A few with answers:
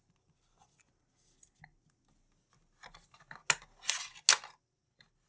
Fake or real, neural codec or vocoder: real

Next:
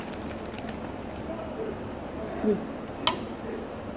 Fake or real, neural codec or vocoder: real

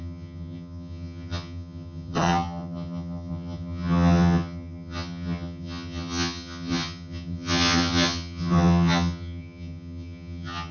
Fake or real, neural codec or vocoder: fake, vocoder, HiFi-GAN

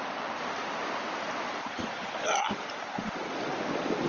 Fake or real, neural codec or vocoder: real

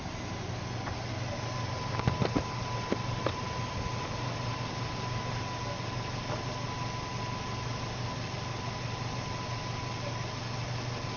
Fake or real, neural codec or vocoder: real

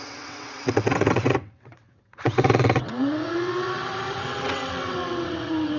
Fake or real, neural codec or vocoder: fake, vocoder, WaveNeXt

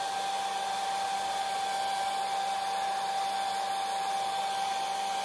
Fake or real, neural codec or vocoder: real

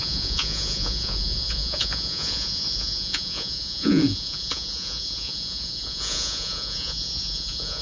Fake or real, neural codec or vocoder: fake, vocoder, Vocos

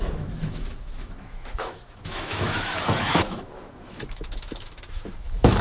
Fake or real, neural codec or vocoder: fake, autoencoder, DAC-VAE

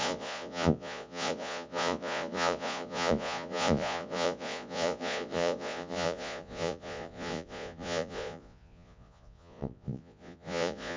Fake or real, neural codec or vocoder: fake, vocoder, Vocos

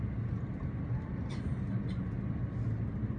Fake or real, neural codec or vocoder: real